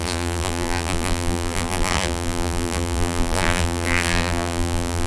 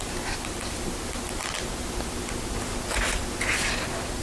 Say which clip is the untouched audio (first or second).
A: second